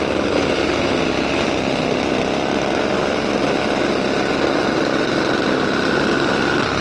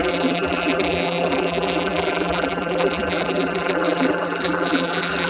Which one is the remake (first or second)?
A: second